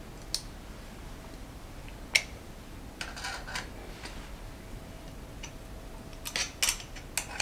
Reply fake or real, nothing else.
real